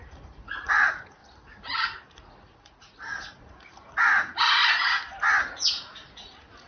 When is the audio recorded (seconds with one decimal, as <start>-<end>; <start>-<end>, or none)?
1.2-1.8; 4.6-5.4